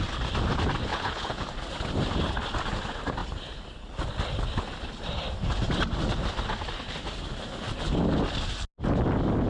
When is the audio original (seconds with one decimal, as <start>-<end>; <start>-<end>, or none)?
0.0-0.9; 1.4-9.5

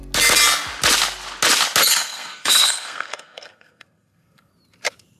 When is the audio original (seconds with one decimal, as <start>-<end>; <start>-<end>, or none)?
0.0-1.8; 4.5-5.2

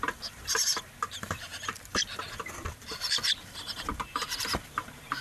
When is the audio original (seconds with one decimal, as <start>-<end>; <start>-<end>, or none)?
none

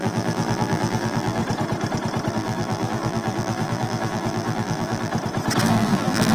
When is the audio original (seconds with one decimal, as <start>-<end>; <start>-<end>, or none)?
1.4-2.3; 5.1-5.6

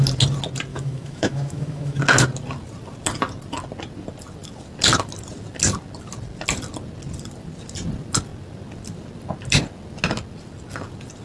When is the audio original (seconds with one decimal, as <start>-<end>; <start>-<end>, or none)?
0.0-0.7; 2.0-11.2

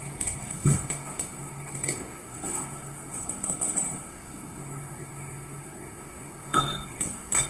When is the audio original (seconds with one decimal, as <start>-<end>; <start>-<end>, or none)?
none

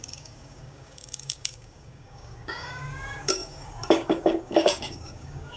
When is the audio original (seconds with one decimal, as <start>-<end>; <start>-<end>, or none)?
none

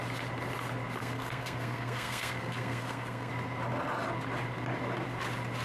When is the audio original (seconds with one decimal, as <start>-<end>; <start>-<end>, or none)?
0.0-1.0; 3.3-5.6